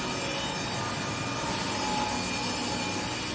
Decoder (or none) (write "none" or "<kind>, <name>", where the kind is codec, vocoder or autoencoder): none